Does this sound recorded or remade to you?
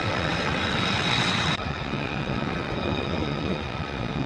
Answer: remade